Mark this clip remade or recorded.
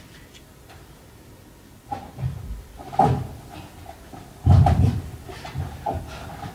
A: recorded